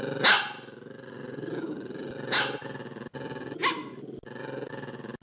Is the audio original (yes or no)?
yes